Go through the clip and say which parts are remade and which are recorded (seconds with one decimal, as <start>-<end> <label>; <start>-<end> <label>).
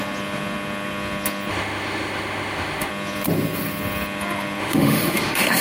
0.0-1.5 recorded; 1.5-2.9 remade; 2.9-4.6 recorded; 4.6-5.6 remade